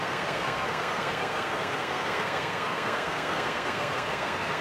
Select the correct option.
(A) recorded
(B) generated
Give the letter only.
B